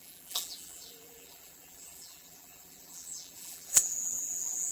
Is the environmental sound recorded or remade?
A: remade